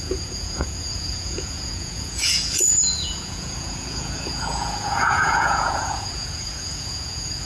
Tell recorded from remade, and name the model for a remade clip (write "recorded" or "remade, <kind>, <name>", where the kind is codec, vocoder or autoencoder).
remade, vocoder, Vocos